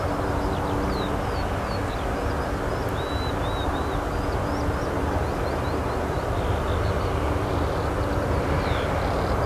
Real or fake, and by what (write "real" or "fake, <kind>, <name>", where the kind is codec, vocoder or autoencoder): real